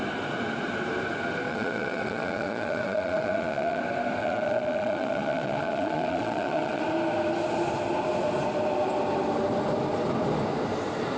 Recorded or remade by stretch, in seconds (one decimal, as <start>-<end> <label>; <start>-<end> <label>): 0.0-1.5 recorded; 1.5-3.8 remade; 3.8-4.2 recorded; 4.2-6.8 remade; 6.8-11.2 recorded